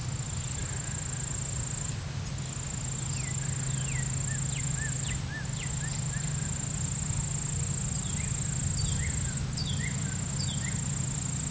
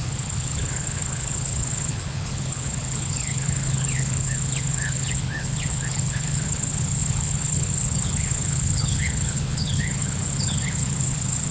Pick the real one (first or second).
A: first